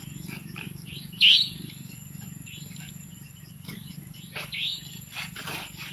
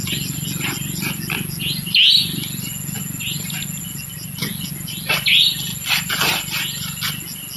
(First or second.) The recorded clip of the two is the second